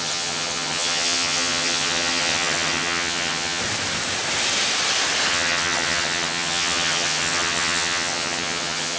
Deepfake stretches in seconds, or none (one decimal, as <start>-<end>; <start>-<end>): 0.0-3.6; 5.3-9.0